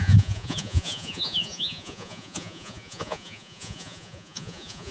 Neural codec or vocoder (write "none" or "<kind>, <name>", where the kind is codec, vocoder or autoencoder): vocoder, Vocos